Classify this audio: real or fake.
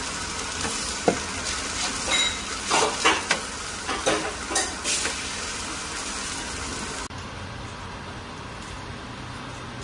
real